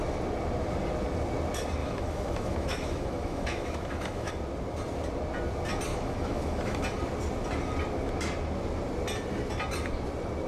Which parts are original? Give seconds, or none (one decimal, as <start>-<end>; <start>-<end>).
0.0-1.8; 4.3-5.9; 6.8-10.5